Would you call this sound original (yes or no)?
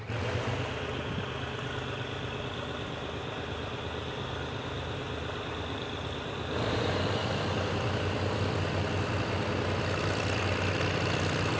yes